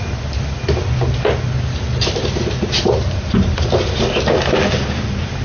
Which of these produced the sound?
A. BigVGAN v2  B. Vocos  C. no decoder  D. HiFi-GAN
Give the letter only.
C